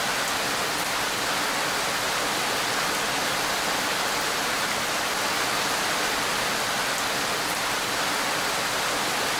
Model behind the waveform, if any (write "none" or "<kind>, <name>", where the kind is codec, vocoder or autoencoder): none